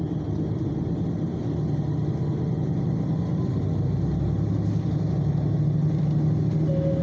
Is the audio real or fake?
real